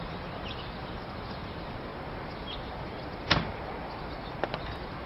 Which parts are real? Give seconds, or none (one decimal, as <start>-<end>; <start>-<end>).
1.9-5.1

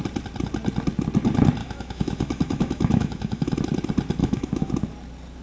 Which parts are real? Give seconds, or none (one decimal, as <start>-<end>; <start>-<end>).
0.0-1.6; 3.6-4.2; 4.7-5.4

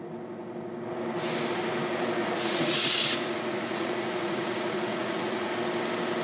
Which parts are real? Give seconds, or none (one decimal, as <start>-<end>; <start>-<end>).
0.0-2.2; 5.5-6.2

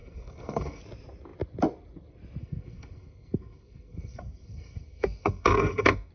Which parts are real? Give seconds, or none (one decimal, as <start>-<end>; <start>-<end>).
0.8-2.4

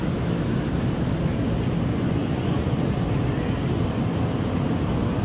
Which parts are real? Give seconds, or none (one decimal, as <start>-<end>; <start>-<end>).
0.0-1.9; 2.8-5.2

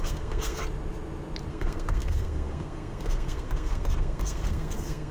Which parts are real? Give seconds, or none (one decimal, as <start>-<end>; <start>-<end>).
0.6-1.5

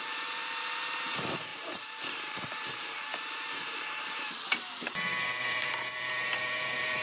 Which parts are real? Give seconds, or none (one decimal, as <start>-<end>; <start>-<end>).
none

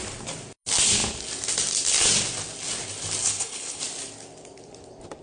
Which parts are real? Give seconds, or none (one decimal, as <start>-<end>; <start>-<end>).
0.0-3.2; 3.8-5.2